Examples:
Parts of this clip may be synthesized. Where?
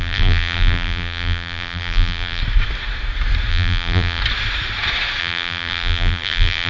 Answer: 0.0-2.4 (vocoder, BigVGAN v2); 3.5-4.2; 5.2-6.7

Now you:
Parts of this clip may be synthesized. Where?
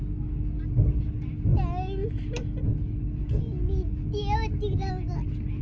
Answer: none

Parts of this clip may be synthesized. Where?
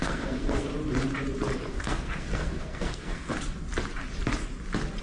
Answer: 0.0-0.7 (codec, SNAC); 1.7-3.3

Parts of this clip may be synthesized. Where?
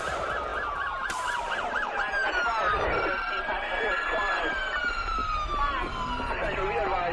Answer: 0.0-5.2 (vocoder, BigVGAN v2); 5.8-7.1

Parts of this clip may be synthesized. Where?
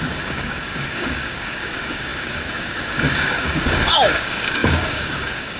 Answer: 0.0-5.6 (codec, DAC)